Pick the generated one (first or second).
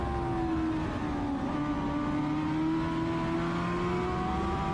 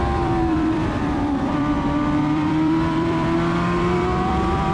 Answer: second